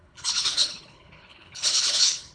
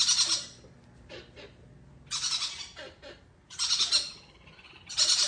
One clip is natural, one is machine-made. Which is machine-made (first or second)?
first